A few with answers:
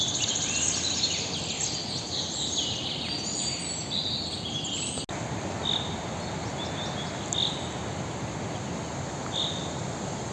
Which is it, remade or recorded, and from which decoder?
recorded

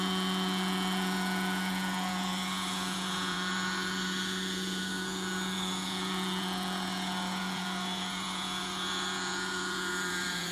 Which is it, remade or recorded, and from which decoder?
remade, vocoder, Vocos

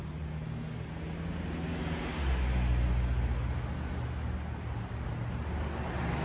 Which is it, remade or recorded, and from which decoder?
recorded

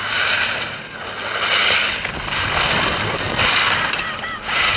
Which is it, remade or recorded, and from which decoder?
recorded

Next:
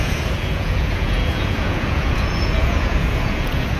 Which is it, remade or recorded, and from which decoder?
remade, vocoder, Vocos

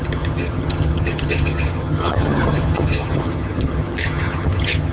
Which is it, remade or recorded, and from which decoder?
remade, vocoder, HiFi-GAN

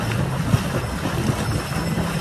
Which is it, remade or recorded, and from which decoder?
recorded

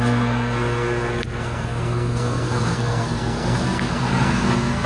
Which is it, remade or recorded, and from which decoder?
remade, codec, SNAC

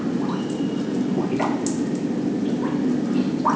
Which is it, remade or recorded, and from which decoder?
recorded